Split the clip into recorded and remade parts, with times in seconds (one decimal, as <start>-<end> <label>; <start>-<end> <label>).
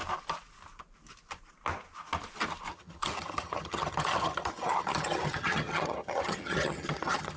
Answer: 0.0-2.7 recorded; 2.7-7.4 remade